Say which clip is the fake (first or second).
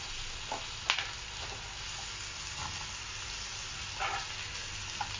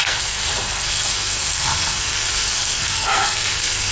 second